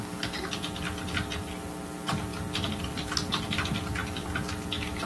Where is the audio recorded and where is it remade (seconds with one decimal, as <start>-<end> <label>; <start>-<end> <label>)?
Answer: 0.0-5.1 recorded